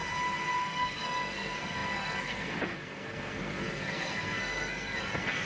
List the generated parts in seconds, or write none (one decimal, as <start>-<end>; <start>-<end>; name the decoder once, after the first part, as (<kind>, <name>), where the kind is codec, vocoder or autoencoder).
0.6-5.5 (codec, SNAC)